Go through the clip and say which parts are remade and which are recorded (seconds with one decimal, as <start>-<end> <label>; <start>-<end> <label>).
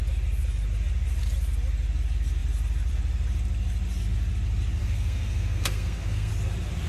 0.0-4.8 recorded; 4.8-6.3 remade; 6.3-6.9 recorded